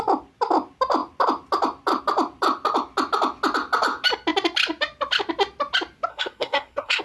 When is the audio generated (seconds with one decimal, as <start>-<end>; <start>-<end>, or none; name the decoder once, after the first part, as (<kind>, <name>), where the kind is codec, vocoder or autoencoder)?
6.1-7.0 (codec, SNAC)